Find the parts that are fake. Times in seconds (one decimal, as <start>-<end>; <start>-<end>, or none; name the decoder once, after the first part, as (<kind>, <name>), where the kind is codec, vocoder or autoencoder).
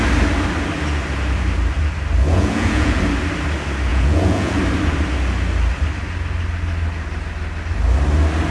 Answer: 2.3-3.0 (vocoder, Vocos); 3.9-4.6